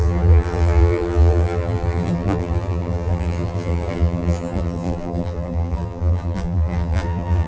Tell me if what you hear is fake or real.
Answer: fake